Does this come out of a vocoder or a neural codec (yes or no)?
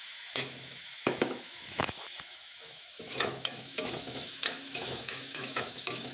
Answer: yes